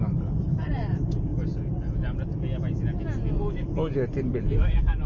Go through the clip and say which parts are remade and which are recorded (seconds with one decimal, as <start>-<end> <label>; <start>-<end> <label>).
0.0-1.3 remade; 1.3-3.5 recorded; 3.5-5.1 remade